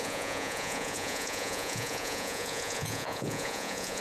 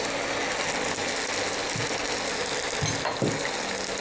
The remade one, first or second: first